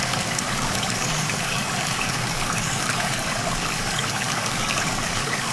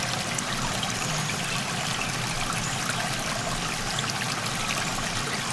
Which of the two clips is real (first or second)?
second